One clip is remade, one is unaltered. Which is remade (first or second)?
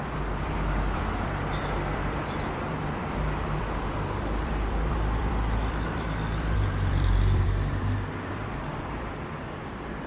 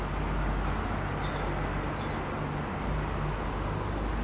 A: first